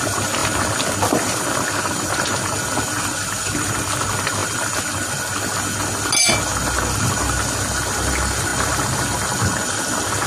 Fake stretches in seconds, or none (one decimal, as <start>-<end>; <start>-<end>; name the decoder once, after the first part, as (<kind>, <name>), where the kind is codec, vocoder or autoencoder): none